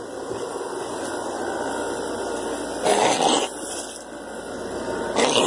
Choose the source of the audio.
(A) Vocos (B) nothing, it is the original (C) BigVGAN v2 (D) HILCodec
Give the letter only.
B